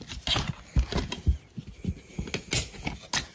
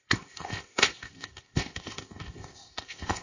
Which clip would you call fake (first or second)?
second